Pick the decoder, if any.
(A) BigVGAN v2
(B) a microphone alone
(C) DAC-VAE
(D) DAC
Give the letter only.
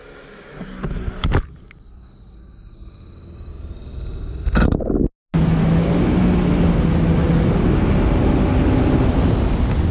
B